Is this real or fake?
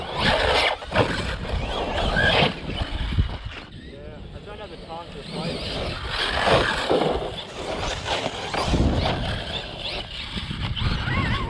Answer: real